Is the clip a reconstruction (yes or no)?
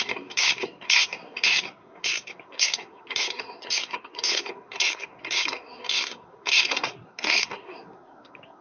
yes